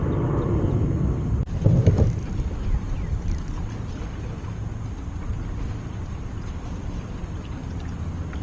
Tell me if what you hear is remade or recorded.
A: recorded